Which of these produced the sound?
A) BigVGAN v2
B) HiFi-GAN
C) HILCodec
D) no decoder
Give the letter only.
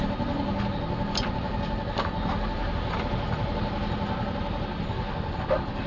D